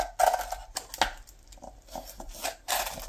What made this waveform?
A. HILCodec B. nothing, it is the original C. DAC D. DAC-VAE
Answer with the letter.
B